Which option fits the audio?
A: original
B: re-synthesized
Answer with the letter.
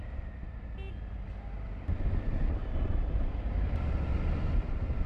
A